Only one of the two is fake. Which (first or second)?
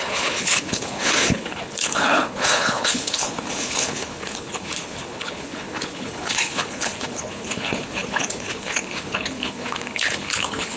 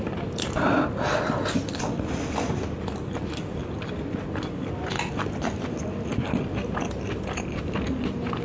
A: first